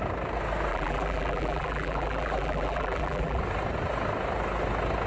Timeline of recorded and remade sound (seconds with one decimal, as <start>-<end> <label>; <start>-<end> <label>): 0.0-0.7 recorded; 0.7-3.4 remade; 3.4-5.1 recorded